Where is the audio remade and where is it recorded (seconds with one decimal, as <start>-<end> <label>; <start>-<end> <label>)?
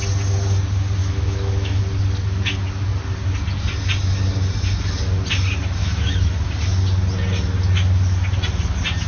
0.0-1.0 recorded; 1.0-1.8 remade; 1.8-5.8 recorded; 5.8-6.5 remade; 6.5-9.1 recorded